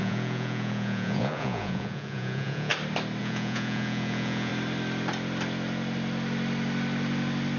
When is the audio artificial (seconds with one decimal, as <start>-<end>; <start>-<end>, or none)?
0.0-2.7; 3.2-4.5